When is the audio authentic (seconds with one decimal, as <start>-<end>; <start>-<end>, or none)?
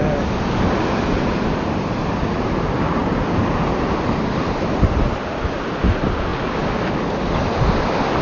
0.0-1.0; 6.3-7.5